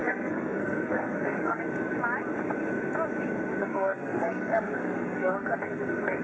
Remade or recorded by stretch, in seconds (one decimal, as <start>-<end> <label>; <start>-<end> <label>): 0.0-1.6 remade; 1.6-3.6 recorded; 3.6-6.2 remade